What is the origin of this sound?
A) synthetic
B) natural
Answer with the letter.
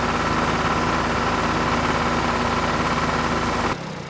B